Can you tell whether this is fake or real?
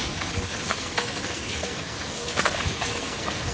fake